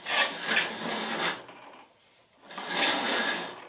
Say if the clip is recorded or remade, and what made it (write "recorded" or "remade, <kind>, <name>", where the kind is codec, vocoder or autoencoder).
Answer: recorded